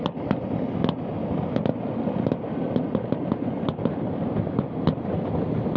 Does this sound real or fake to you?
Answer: real